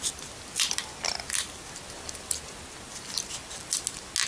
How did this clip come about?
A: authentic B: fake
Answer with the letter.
A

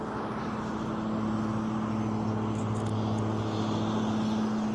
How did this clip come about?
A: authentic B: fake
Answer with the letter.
A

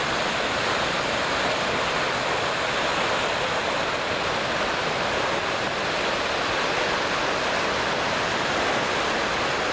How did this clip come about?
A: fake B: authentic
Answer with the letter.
B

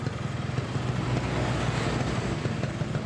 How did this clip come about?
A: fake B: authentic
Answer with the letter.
B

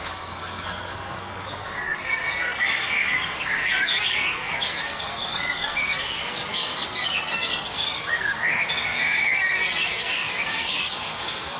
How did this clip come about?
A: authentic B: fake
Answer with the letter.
B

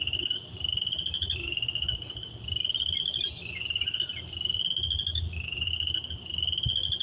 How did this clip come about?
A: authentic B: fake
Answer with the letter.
A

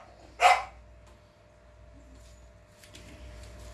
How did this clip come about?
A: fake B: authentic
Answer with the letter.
B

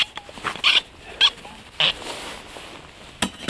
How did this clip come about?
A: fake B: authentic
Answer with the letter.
B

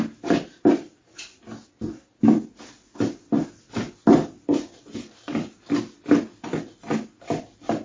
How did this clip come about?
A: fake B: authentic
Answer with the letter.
B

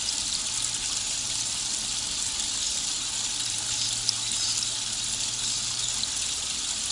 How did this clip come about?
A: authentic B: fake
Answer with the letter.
A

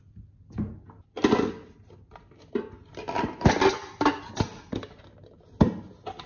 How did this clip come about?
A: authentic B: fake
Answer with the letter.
A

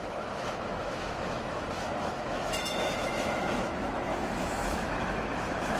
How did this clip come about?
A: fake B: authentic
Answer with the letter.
A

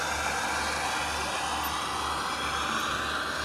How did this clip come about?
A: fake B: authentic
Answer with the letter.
B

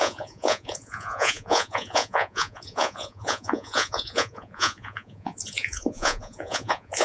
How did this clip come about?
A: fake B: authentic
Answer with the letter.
A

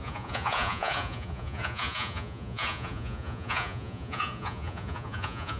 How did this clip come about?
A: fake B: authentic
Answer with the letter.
A